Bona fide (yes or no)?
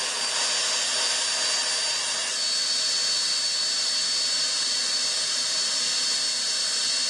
yes